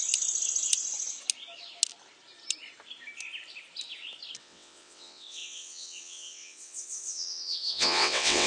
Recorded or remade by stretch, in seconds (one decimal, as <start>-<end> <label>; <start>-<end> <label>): 0.0-4.4 recorded; 4.4-8.5 remade